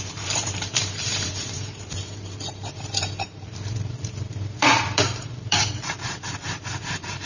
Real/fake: fake